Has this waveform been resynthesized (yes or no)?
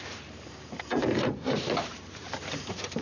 yes